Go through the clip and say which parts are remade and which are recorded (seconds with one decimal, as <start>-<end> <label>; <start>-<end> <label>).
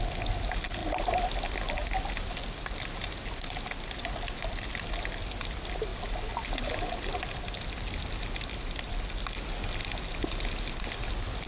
0.0-11.5 recorded